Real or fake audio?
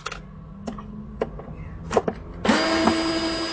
real